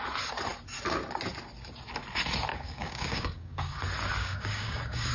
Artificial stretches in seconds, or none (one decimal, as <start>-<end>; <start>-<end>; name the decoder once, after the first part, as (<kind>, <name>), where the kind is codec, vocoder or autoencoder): 2.5-3.8 (codec, DAC); 4.2-5.1